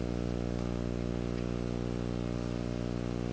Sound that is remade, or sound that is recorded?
recorded